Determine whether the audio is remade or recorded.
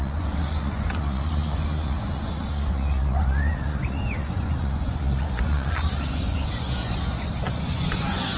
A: remade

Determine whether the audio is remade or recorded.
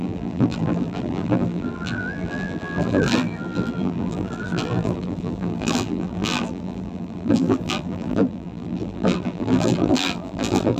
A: remade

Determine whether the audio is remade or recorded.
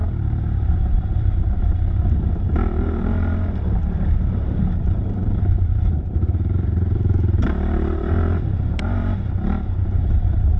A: remade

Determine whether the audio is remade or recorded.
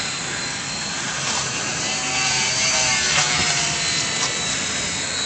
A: remade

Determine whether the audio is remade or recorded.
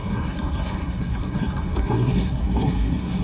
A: remade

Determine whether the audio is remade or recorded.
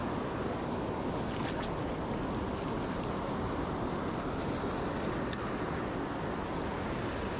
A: recorded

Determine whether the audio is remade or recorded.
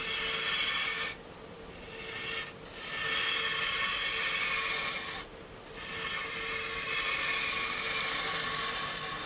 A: recorded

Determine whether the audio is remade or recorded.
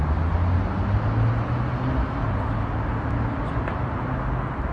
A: recorded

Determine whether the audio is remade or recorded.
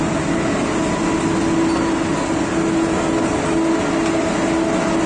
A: recorded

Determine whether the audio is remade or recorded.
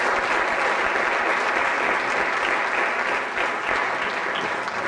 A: recorded